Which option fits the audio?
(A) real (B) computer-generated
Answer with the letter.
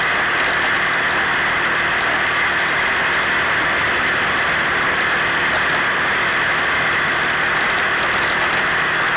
A